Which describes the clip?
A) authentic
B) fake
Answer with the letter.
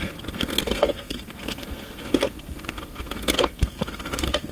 B